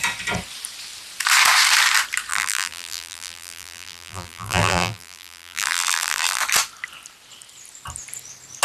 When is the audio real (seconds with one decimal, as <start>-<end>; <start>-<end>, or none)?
0.0-2.3; 6.4-8.6